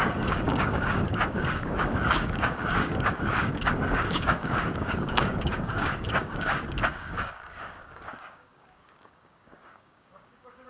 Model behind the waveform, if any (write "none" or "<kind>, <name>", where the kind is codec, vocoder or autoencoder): codec, DAC